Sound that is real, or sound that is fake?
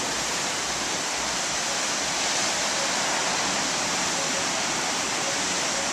real